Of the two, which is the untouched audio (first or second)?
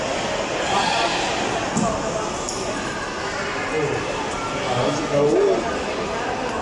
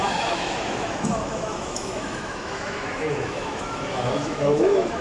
first